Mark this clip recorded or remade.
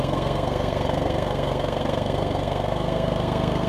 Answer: remade